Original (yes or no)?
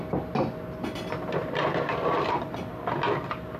yes